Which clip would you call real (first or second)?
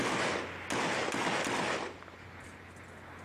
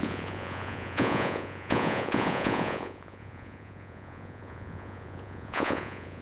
first